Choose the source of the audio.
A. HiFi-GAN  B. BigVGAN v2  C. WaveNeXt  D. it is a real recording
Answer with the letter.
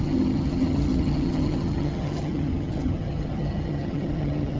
A